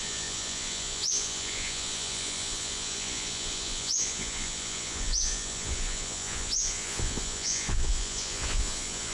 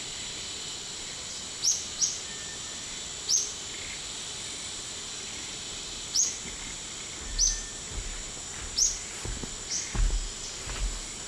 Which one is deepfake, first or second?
first